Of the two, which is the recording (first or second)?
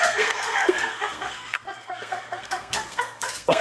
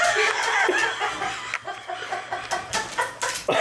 second